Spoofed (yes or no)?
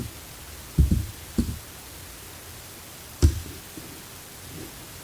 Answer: no